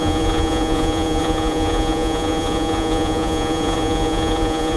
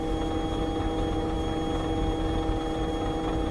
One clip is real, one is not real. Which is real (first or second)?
second